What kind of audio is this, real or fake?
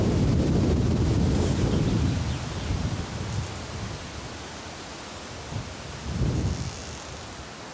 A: real